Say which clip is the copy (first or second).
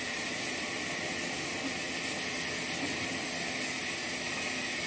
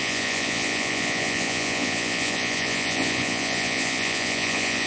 second